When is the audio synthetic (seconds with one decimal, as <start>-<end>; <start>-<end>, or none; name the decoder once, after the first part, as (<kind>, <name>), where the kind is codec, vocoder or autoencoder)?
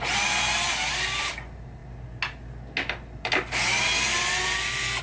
none